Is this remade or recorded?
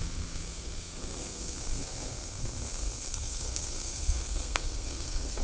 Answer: remade